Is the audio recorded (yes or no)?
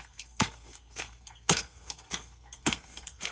no